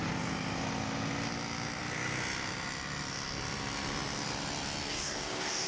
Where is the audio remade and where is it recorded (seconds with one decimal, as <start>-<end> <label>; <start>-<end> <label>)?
0.0-4.9 recorded; 4.9-5.7 remade